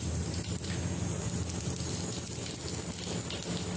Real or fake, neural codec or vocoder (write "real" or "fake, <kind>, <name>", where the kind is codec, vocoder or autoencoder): real